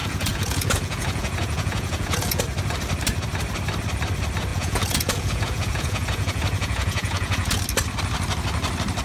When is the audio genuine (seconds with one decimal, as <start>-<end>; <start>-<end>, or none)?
2.4-4.5; 7.6-9.0